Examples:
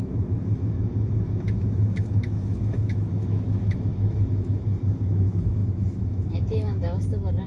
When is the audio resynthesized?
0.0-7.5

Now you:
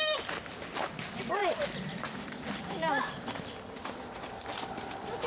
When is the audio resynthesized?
none